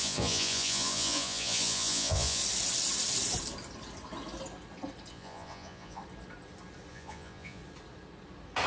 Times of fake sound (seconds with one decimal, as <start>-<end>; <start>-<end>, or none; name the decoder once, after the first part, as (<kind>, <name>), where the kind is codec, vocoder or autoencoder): 0.0-2.4 (vocoder, Vocos); 5.1-6.0; 6.9-7.6